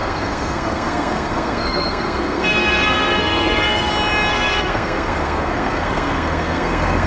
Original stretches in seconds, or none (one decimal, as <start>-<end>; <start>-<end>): 3.9-4.3